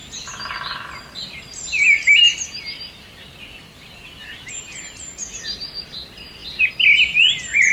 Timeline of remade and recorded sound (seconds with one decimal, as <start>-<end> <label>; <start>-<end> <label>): 0.0-4.5 remade; 4.5-7.7 recorded